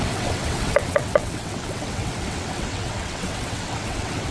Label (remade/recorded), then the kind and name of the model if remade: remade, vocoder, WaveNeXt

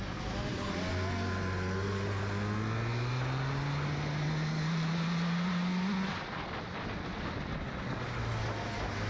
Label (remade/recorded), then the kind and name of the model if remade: recorded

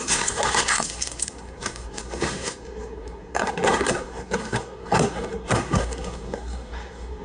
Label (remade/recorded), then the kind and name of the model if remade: remade, codec, SNAC